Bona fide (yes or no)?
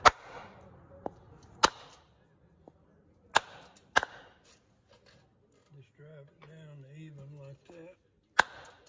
yes